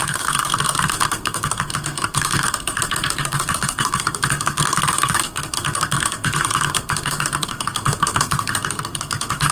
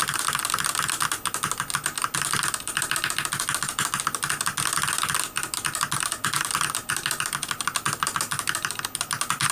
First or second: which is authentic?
second